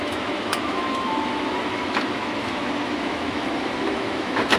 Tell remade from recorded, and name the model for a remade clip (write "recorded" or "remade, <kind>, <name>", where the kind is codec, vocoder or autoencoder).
remade, autoencoder, DAC-VAE